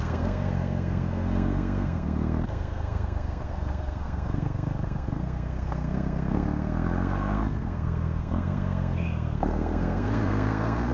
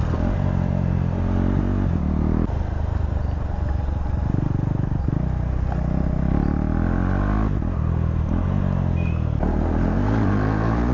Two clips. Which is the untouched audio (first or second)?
second